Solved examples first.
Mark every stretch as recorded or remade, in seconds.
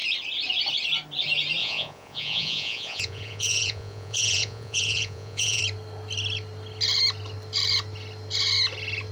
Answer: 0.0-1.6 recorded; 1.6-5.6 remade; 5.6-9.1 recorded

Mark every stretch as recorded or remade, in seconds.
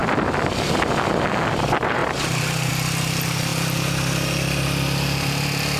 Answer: 0.0-2.0 recorded; 2.0-2.7 remade; 2.7-5.8 recorded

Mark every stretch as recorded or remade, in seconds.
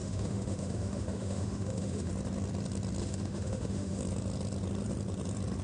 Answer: 0.0-2.1 remade; 2.1-3.0 recorded; 3.0-4.0 remade; 4.0-5.6 recorded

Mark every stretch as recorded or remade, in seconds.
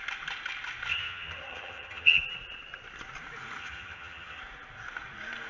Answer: 0.0-0.9 recorded; 0.9-2.2 remade; 2.2-3.6 recorded; 3.6-4.4 remade; 4.4-5.5 recorded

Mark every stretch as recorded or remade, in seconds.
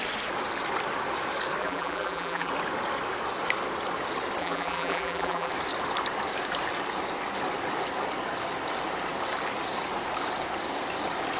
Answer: 0.0-1.6 recorded; 1.6-2.5 remade; 2.5-4.4 recorded; 4.4-5.5 remade; 5.5-11.4 recorded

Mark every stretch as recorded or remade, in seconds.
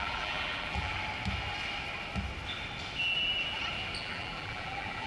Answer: 0.0-0.9 remade; 0.9-4.0 recorded; 4.0-5.1 remade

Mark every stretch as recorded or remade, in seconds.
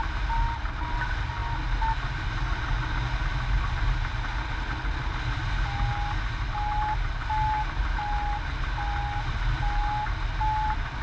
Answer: 0.0-11.0 recorded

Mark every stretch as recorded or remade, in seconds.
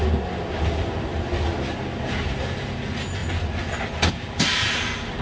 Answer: 0.0-5.2 recorded